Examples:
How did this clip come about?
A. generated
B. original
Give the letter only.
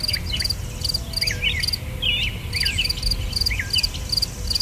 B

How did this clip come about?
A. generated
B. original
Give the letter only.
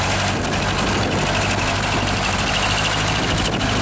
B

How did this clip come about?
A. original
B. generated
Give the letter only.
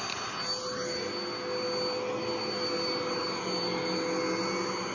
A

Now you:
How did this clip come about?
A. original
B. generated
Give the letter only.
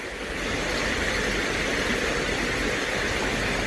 A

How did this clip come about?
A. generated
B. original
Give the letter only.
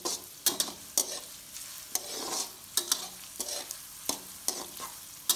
B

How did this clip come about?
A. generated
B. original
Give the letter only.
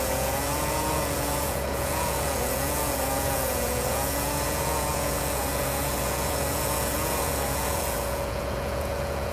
A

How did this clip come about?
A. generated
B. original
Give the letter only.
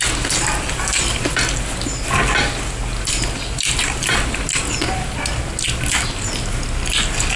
B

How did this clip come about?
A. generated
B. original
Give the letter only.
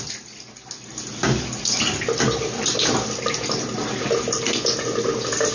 B